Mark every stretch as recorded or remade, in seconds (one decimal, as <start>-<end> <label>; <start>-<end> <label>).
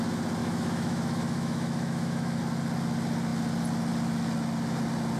0.0-0.4 recorded; 0.4-2.4 remade; 2.4-5.2 recorded